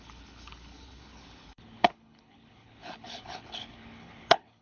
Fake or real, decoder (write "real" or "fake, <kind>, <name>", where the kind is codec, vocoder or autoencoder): fake, codec, HILCodec